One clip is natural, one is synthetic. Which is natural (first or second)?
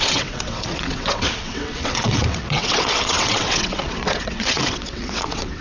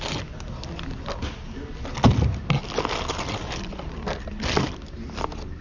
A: second